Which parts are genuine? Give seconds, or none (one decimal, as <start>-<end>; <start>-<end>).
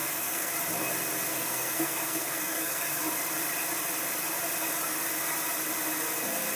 0.5-1.3; 3.0-6.6